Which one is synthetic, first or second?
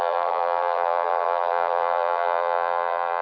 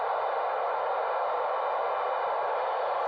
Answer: first